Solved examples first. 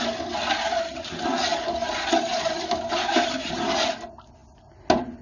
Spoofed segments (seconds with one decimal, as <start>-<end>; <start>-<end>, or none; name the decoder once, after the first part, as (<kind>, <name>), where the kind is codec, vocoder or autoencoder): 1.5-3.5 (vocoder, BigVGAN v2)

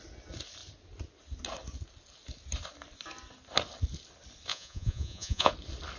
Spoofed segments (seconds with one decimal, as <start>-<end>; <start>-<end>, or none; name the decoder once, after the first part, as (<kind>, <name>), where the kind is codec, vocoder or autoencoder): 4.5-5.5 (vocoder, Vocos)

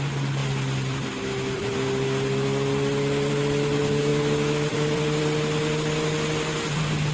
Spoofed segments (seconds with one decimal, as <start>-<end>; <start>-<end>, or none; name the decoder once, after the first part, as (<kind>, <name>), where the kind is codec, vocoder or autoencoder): none

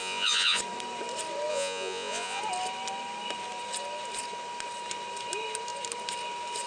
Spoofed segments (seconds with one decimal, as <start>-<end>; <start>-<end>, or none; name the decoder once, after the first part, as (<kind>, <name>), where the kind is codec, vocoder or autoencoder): 0.0-0.6 (vocoder, Vocos); 1.5-2.4

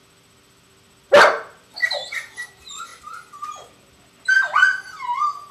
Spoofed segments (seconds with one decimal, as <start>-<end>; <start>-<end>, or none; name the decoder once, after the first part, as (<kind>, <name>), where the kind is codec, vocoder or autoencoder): none